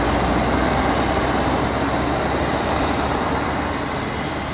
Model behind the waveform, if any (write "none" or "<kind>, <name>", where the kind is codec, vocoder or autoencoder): none